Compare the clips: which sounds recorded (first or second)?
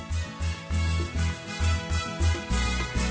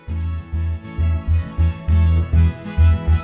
first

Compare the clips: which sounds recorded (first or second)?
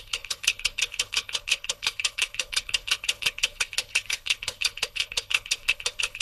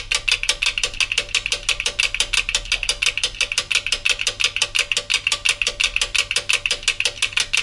second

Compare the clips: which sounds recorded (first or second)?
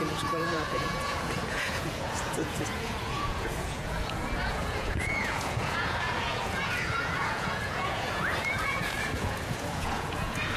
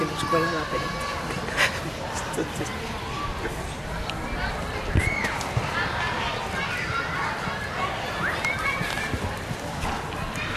second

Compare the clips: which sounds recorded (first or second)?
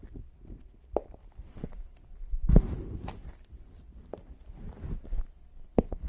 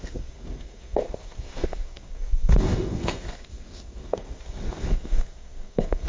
first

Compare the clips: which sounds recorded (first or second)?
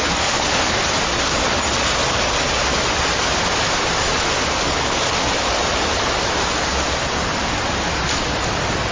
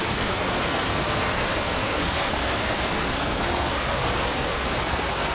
first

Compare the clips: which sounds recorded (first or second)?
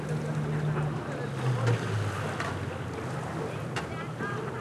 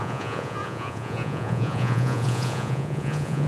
first